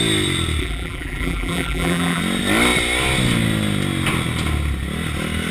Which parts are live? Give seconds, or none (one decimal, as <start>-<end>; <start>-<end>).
0.0-0.6; 2.2-5.5